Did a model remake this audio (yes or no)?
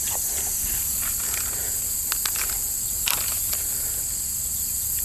no